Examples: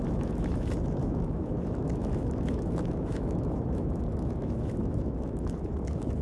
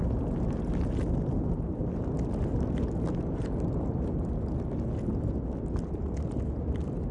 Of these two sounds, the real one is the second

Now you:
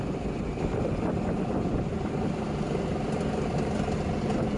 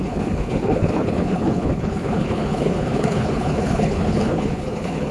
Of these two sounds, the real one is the first